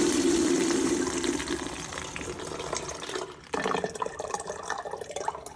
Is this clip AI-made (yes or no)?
no